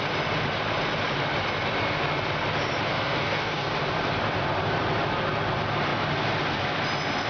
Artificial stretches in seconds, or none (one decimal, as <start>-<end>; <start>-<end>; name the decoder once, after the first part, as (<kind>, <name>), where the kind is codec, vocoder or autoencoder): 2.9-3.7 (codec, SNAC)